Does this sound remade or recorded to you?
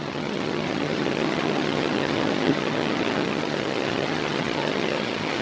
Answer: remade